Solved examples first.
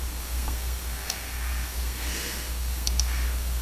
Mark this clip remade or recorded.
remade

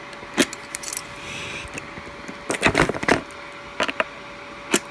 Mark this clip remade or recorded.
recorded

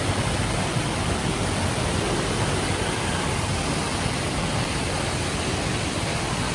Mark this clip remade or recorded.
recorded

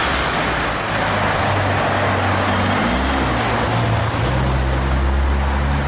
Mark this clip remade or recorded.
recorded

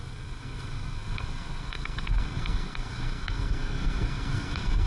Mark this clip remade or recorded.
remade